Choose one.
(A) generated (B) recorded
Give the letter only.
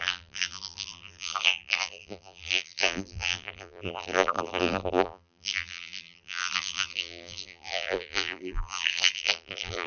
A